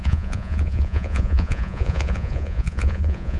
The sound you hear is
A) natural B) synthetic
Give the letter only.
B